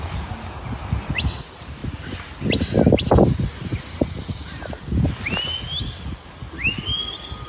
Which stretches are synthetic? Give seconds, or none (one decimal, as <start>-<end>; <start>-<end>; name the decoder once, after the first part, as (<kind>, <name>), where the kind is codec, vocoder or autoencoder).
none